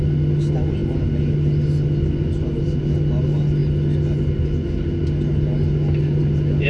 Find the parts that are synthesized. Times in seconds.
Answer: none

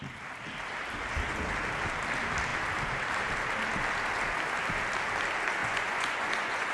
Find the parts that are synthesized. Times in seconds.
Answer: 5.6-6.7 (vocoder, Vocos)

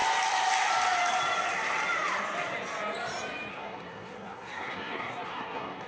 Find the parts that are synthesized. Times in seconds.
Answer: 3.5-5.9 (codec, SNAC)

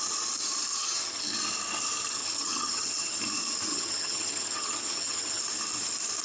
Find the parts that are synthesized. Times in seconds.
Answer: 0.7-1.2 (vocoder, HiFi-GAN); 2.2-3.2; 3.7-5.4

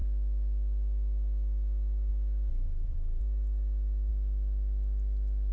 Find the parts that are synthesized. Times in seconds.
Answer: 2.5-3.2 (vocoder, BigVGAN v2)

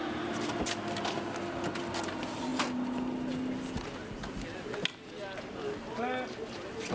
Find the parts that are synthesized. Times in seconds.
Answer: none

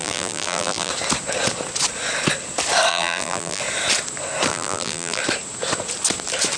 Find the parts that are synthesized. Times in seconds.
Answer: 0.0-0.9 (vocoder, BigVGAN v2); 2.9-3.6; 4.5-5.2

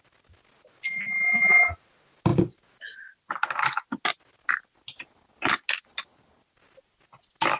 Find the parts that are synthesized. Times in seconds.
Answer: none